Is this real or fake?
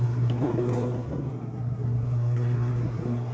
fake